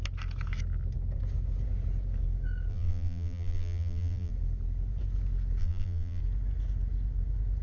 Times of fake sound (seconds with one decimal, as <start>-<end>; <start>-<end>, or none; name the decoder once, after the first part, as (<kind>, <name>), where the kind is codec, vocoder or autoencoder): 2.7-4.3 (vocoder, BigVGAN v2); 5.6-6.2